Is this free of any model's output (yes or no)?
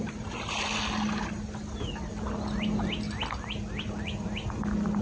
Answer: yes